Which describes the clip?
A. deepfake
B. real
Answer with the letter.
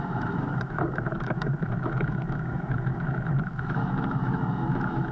A